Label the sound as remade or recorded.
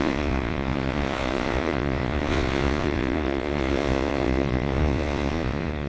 remade